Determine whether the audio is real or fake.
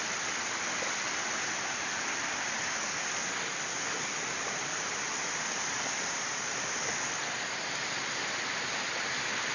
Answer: real